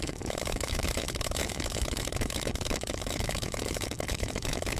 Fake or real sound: fake